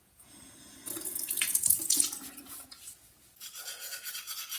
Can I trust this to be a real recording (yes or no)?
no